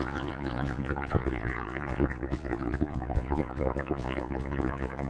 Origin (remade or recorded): remade